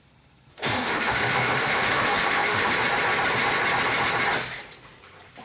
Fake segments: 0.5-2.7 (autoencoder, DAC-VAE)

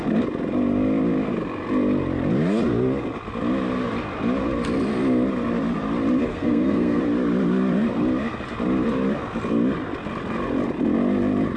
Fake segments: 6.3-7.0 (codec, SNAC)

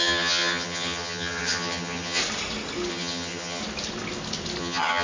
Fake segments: 0.0-2.2 (vocoder, HiFi-GAN); 2.9-3.6; 4.6-5.0

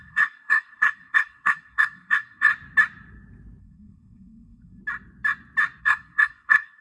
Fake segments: 0.0-2.5 (codec, SNAC); 3.6-4.8; 5.8-6.8